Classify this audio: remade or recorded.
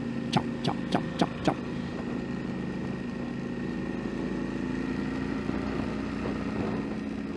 recorded